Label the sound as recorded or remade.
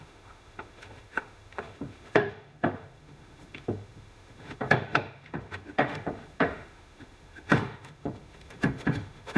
remade